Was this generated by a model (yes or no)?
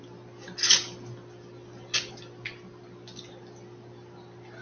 no